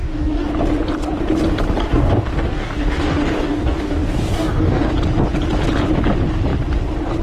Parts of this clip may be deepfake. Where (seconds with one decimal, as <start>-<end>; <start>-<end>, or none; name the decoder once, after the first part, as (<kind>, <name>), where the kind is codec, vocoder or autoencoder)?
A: 0.0-0.5 (codec, DAC); 1.9-4.9